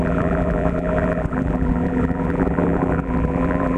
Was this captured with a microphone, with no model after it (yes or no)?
no